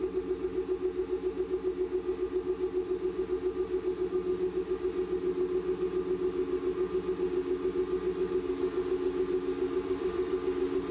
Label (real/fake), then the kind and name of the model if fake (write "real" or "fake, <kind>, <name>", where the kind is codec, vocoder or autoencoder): real